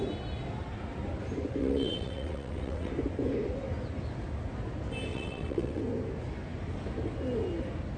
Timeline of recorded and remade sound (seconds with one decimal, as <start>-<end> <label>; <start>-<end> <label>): 0.0-1.6 recorded; 1.6-2.9 remade; 2.9-5.1 recorded; 5.1-5.8 remade; 5.8-8.0 recorded